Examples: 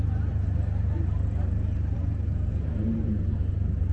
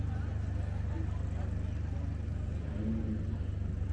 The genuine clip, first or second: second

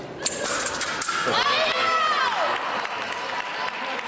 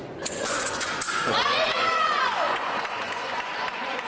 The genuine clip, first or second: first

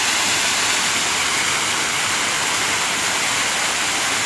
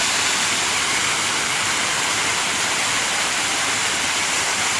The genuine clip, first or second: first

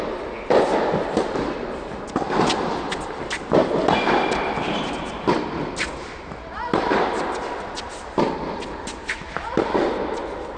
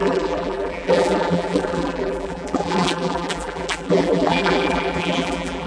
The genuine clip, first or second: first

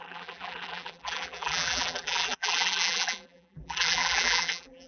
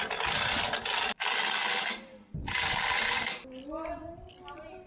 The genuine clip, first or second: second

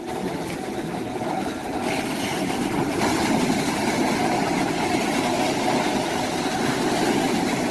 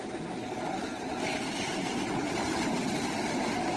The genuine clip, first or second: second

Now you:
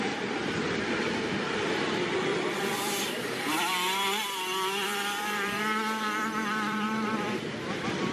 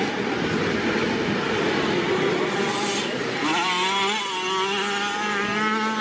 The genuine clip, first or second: second